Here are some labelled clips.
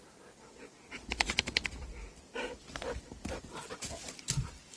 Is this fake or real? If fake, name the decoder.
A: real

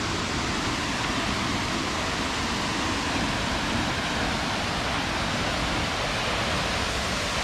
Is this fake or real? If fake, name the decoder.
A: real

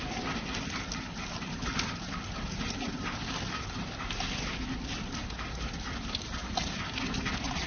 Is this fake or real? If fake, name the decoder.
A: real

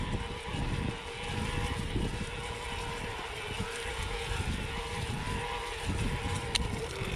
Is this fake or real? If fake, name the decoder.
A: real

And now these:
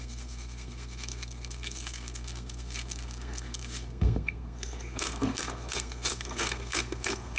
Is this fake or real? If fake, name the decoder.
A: fake, codec, SNAC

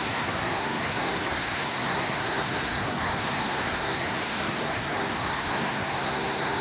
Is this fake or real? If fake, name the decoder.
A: fake, codec, SNAC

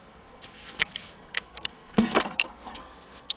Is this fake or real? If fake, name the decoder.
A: fake, codec, SNAC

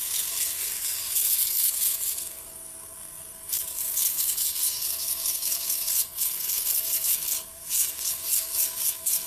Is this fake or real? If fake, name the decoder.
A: fake, codec, SNAC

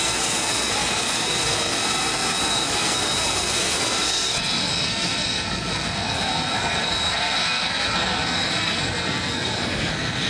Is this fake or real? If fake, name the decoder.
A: fake, codec, SNAC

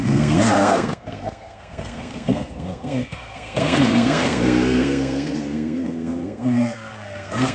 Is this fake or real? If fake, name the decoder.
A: fake, codec, SNAC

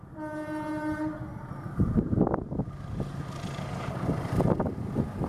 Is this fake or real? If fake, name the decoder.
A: real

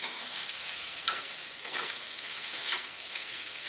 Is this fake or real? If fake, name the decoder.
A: fake, codec, SNAC